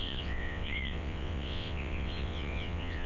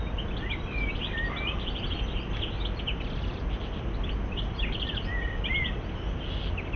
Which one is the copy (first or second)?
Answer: first